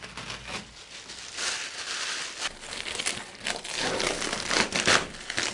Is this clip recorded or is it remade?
recorded